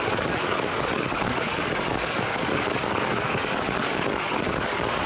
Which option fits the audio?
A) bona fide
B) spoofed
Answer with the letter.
B